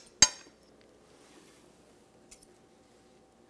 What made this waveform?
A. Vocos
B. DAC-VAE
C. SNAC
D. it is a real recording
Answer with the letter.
D